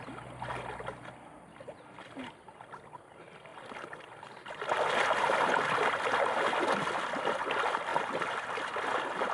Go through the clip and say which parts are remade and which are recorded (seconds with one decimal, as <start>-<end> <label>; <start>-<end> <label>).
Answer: 0.0-9.3 recorded